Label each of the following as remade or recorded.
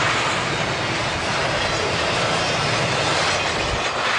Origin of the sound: recorded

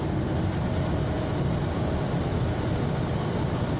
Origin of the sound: recorded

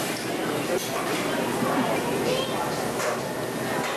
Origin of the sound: recorded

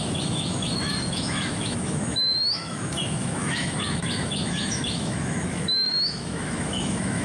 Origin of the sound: remade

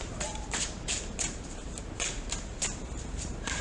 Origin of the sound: remade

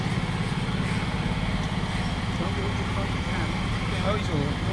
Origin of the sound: recorded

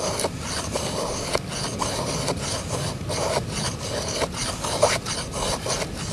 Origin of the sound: recorded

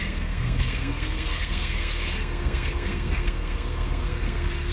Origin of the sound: remade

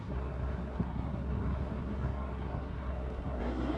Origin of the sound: remade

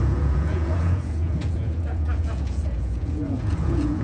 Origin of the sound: remade